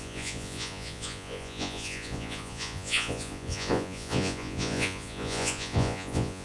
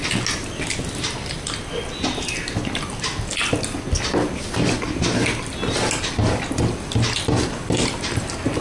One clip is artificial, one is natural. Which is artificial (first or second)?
first